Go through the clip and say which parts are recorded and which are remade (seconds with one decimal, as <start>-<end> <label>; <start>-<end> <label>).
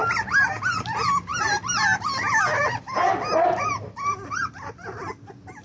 0.0-5.6 recorded